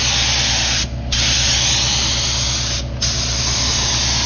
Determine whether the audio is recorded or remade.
recorded